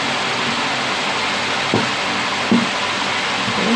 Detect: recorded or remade recorded